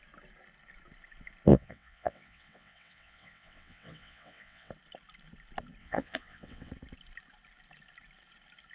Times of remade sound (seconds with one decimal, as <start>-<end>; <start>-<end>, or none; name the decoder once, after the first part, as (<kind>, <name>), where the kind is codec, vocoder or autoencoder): 1.5-4.7 (vocoder, WaveNeXt); 5.8-6.7